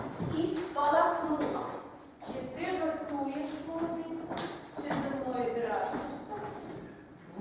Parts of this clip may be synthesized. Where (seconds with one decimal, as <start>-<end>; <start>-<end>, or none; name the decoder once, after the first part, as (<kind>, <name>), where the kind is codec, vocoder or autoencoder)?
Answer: 0.8-2.7 (vocoder, Vocos)